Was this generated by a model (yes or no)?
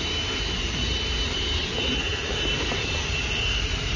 yes